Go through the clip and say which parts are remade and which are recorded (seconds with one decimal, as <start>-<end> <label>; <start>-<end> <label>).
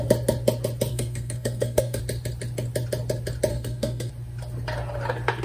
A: 0.0-0.9 recorded; 0.9-2.0 remade; 2.0-3.5 recorded; 3.5-4.1 remade; 4.1-5.4 recorded